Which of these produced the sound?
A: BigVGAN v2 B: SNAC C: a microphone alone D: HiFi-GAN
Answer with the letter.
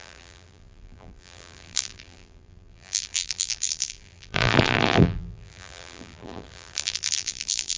A